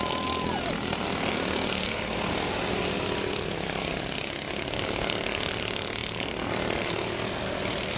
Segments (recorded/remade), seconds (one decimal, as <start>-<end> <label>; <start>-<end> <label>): 0.0-8.0 recorded